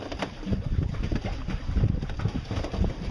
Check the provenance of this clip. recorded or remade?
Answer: recorded